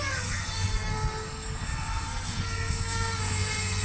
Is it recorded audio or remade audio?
remade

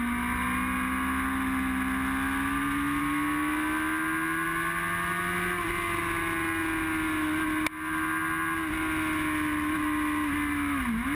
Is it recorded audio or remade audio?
recorded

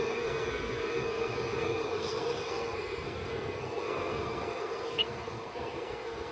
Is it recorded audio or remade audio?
remade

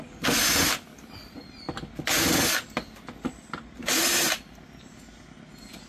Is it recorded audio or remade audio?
recorded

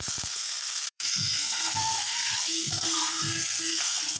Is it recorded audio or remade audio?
remade